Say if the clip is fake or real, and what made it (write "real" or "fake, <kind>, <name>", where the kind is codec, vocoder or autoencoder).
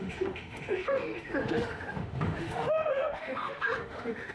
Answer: fake, autoencoder, DAC-VAE